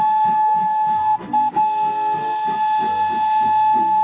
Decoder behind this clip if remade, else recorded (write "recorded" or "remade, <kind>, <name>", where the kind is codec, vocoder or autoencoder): recorded